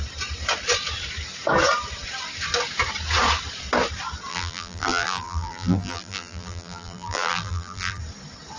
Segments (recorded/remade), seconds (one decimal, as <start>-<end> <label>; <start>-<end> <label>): 0.0-4.3 recorded; 4.3-8.0 remade; 8.0-8.6 recorded